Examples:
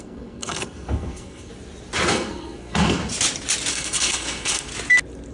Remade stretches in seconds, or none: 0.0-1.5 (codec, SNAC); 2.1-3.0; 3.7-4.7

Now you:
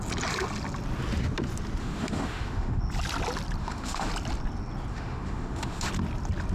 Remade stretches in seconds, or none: 1.8-2.8 (autoencoder, DAC-VAE); 3.6-4.1; 4.9-5.9

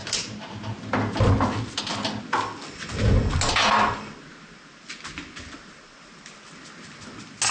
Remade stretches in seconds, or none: none

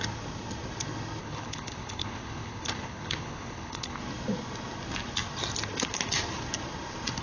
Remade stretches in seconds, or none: 1.2-4.0 (codec, HILCodec)

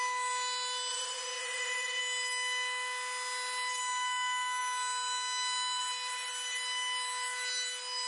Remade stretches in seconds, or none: 0.9-2.0 (vocoder, Vocos)

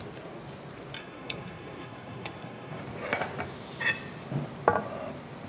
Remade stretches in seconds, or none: 1.0-2.8 (codec, SNAC)

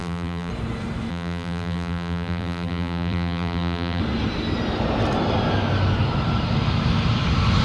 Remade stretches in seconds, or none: 0.0-0.5 (vocoder, BigVGAN v2); 1.1-4.0